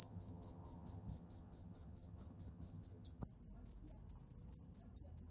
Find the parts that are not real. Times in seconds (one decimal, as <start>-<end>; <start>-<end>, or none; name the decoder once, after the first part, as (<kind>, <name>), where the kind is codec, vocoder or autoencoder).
0.0-3.2 (vocoder, HiFi-GAN)